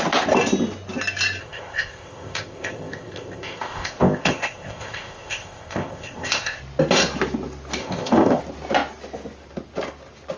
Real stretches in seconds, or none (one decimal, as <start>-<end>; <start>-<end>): 0.0-1.4; 6.6-7.8; 8.4-10.4